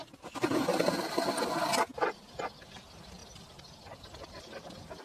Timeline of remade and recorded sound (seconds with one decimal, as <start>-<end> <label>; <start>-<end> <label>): 0.0-1.9 recorded; 1.9-2.4 remade; 2.4-3.2 recorded; 3.2-5.0 remade

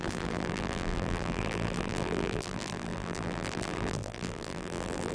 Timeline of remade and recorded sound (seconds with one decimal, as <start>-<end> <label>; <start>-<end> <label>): 0.0-5.1 remade